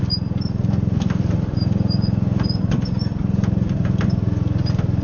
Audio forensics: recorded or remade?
recorded